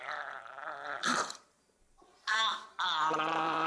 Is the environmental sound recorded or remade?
remade